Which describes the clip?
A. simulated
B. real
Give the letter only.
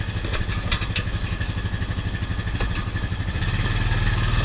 B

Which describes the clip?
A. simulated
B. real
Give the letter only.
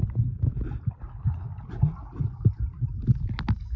B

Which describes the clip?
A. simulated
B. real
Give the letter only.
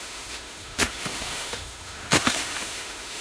A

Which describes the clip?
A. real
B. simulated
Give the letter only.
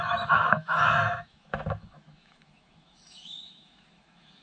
B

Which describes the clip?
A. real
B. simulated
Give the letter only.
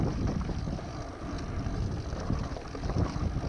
A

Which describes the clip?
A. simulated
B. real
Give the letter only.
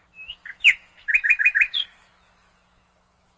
A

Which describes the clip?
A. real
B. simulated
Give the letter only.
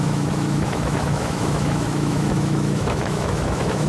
B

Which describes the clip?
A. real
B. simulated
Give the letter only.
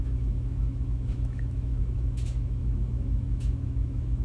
B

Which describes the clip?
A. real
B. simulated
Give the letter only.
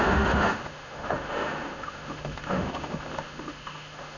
B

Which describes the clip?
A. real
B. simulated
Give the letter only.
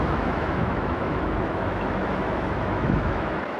B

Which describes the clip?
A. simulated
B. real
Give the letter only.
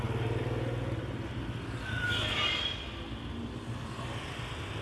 B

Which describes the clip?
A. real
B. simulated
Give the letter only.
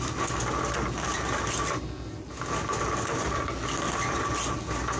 A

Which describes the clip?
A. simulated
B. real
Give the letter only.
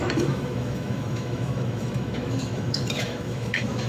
A